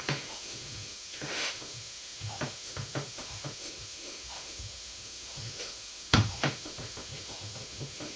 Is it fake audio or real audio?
fake